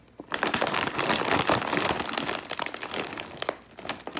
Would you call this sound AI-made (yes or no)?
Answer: no